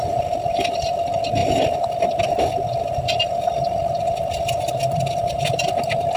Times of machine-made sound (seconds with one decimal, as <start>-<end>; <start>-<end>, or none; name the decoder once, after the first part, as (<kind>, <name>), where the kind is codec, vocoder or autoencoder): none